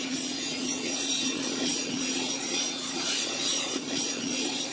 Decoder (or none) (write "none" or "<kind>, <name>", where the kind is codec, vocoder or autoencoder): vocoder, Vocos